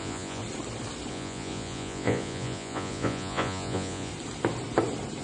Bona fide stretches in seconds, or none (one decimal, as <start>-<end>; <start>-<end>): 0.4-1.1; 4.1-5.2